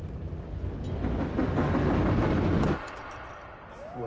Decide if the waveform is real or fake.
real